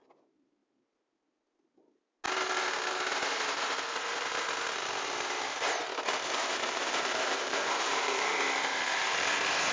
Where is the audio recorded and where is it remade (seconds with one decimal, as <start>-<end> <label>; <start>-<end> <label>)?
0.0-6.4 recorded; 6.4-8.3 remade; 8.3-9.7 recorded